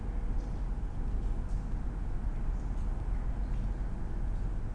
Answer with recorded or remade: recorded